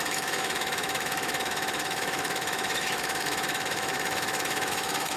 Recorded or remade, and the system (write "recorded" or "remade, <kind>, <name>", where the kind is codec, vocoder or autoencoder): remade, autoencoder, DAC-VAE